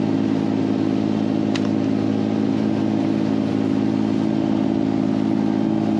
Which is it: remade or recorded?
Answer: recorded